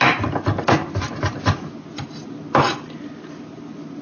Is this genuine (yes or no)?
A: yes